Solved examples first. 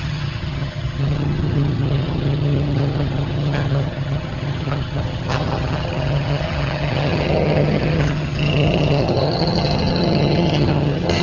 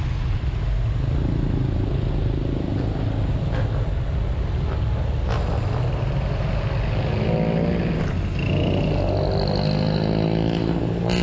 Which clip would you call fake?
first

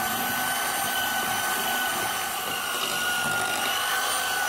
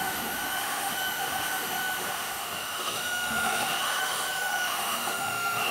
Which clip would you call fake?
second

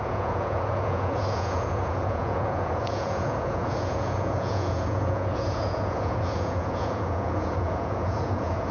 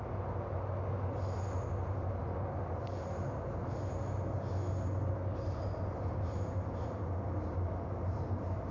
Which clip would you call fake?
first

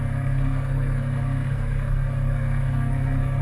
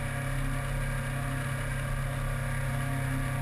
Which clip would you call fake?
first